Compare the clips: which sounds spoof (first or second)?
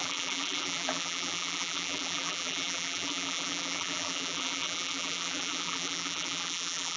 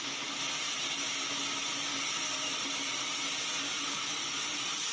first